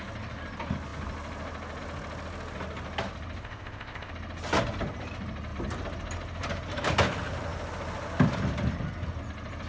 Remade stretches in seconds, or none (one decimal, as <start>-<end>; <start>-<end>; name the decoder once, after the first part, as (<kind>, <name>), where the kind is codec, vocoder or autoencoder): 3.4-4.1 (codec, ZipCodec)